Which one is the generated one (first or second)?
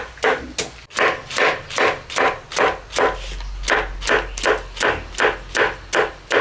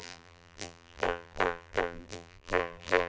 second